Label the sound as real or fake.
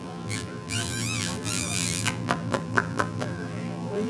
fake